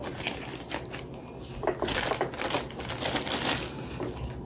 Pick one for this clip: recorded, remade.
recorded